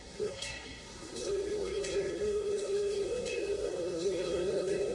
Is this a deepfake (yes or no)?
yes